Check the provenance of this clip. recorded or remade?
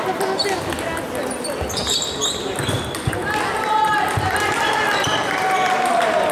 recorded